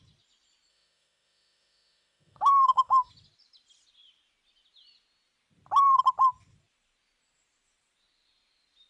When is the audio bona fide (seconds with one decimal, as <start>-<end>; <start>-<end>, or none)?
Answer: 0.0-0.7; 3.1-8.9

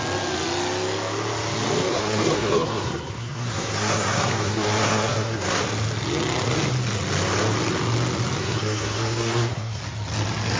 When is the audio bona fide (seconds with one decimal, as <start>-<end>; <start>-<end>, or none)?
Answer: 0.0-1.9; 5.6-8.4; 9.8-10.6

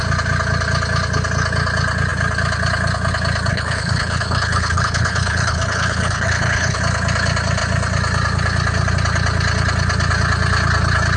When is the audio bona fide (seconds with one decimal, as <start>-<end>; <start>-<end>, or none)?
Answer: 0.0-3.5; 6.8-11.2